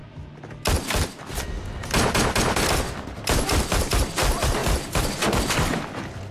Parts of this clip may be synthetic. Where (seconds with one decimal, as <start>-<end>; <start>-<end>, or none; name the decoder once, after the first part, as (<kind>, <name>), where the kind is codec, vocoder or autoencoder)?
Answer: 3.2-6.3 (vocoder, BigVGAN v2)